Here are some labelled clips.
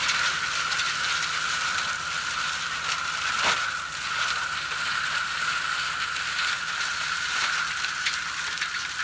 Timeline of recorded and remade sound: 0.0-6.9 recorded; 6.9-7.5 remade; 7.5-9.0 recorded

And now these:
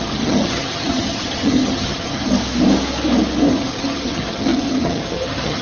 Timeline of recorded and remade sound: 0.0-2.3 remade; 2.3-3.5 recorded; 3.5-5.6 remade